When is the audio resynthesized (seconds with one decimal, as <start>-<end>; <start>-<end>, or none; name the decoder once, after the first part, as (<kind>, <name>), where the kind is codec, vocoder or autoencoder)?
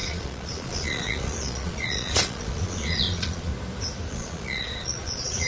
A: 0.0-3.5 (vocoder, Vocos); 4.1-5.5